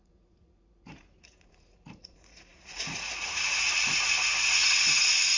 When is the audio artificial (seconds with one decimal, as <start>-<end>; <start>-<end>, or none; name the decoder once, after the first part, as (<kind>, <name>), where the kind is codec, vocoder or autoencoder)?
0.0-5.4 (vocoder, Vocos)